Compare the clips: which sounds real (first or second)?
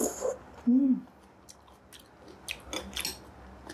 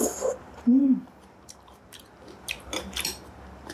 first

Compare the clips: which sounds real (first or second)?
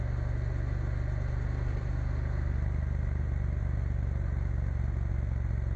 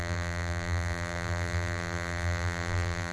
first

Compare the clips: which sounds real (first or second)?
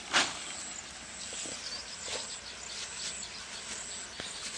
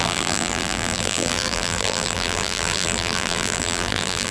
first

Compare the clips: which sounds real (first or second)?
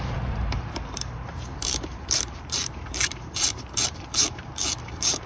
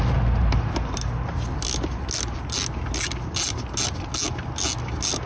second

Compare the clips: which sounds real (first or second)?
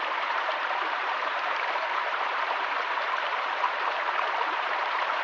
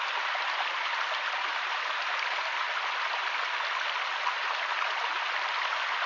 second